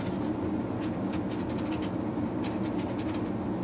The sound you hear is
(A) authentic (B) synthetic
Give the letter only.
A